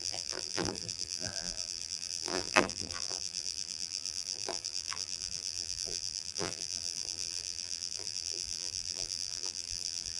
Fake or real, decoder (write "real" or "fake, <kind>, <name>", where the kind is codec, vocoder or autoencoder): fake, vocoder, BigVGAN v2